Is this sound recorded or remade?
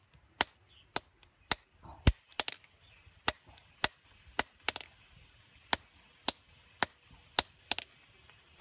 recorded